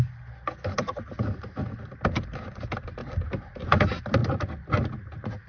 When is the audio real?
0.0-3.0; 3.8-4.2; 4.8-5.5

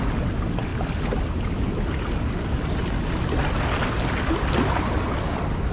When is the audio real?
0.0-5.7

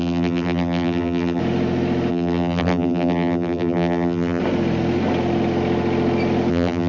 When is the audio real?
1.4-2.1; 4.4-6.5

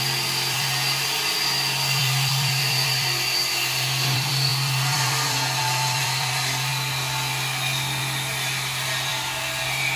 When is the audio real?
6.7-8.0

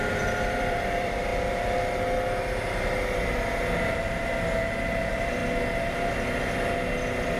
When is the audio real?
1.3-5.0; 5.4-7.0

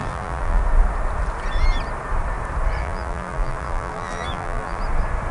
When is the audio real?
0.6-2.8; 4.8-5.3

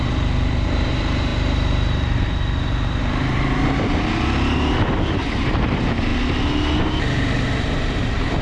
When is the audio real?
6.1-6.8

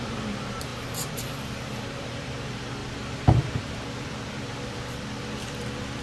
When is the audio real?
none